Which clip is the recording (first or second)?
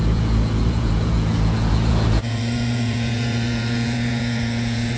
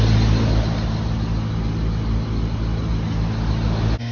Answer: second